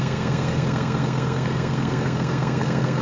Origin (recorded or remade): remade